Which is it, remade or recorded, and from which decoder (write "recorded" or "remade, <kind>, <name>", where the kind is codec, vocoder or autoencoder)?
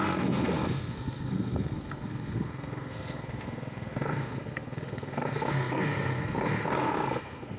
remade, codec, SNAC